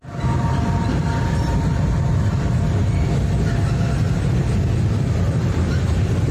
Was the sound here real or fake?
real